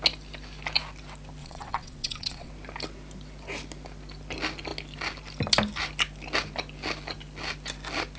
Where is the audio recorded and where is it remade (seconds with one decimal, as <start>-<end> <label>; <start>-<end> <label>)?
0.0-1.4 recorded; 1.4-2.5 remade; 2.5-8.2 recorded